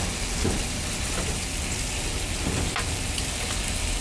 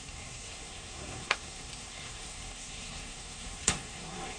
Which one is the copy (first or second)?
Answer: second